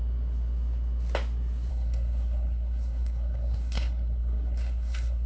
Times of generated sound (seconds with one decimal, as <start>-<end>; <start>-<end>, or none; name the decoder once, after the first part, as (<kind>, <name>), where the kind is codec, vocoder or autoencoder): 1.7-5.3 (codec, SNAC)